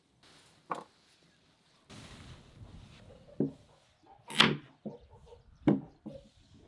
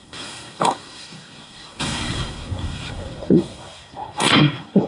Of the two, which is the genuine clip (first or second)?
first